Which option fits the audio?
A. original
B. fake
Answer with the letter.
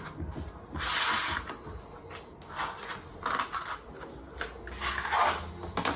A